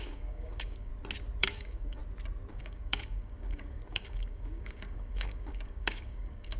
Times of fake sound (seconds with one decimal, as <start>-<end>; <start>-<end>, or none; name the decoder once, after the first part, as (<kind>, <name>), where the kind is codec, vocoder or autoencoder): 0.0-0.9 (codec, DAC); 1.4-2.0; 2.5-6.6